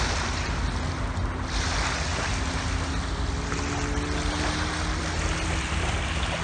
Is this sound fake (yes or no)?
no